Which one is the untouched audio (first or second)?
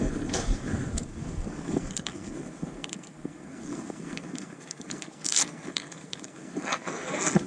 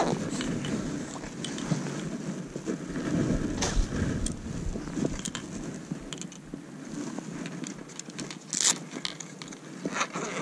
second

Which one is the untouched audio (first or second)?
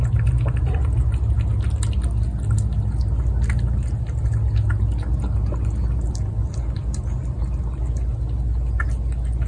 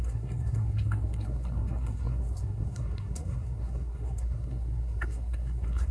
first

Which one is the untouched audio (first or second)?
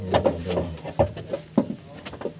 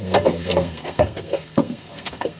first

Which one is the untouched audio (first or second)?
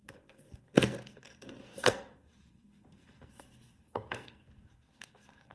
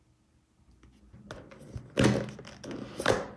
second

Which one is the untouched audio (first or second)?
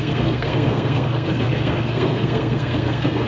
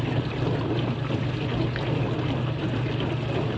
second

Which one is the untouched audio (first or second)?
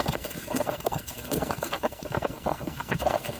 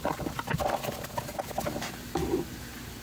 second